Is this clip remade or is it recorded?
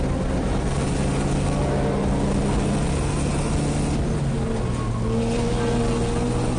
recorded